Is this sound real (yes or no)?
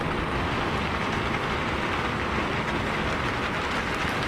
yes